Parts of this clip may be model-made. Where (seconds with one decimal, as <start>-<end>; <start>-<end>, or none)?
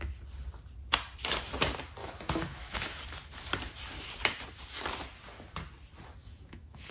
2.0-3.0; 6.2-6.9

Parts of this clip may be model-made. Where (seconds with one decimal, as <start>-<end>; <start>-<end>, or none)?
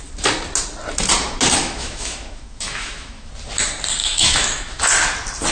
1.6-3.3; 4.0-4.8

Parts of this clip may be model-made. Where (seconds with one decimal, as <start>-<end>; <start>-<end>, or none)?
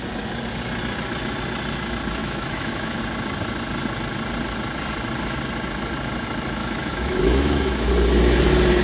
2.2-3.0; 6.6-7.9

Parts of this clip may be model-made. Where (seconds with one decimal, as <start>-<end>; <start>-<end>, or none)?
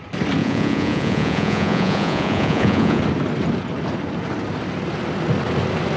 0.4-3.0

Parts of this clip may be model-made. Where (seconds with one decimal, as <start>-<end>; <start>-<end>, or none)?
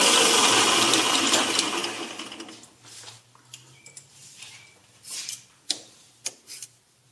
0.0-1.8; 4.1-7.1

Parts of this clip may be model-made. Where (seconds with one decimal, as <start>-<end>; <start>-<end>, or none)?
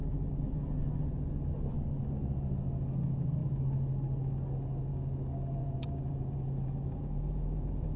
5.6-8.0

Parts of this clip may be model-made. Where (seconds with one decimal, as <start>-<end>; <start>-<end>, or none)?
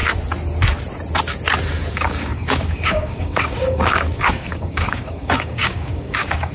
1.9-6.5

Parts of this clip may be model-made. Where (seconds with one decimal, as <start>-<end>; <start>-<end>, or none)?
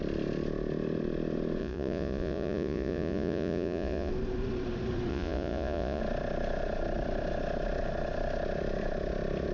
1.6-4.1; 5.1-6.0